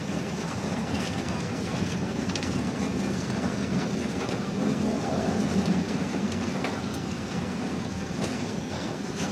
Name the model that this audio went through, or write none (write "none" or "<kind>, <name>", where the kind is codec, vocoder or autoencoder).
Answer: codec, SNAC